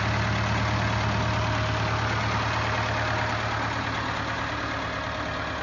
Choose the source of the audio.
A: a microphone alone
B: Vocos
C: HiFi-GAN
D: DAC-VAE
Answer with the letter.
A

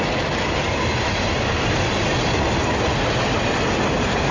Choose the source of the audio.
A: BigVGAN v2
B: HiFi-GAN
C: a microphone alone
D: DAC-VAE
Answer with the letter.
C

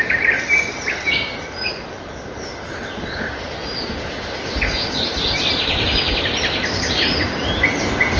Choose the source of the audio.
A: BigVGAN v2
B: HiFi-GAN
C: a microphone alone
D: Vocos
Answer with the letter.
C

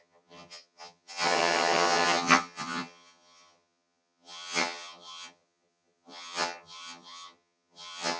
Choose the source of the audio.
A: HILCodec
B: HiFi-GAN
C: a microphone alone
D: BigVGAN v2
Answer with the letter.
B